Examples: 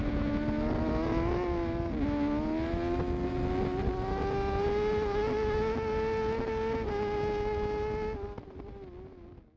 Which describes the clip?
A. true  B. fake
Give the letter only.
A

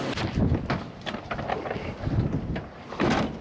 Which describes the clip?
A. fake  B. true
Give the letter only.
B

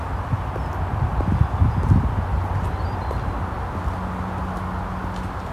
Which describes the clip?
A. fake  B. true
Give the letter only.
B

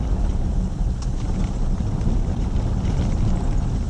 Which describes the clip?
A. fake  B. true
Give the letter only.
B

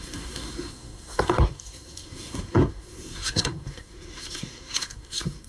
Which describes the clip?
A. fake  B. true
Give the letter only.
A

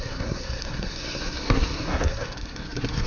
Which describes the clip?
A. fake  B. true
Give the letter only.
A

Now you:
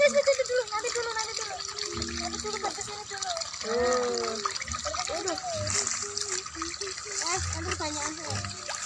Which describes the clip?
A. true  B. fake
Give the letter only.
A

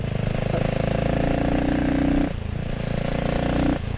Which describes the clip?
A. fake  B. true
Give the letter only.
B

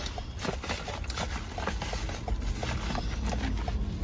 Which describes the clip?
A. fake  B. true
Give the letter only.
B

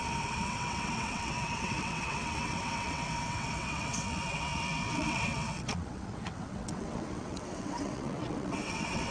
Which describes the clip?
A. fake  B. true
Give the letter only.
A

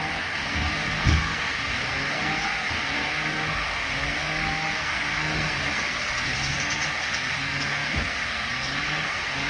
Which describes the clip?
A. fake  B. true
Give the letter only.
A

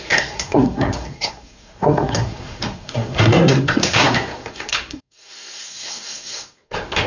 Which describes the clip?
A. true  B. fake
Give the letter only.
B